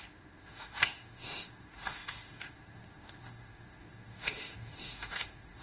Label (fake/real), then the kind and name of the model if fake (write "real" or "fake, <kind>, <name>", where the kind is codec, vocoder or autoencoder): fake, autoencoder, DAC-VAE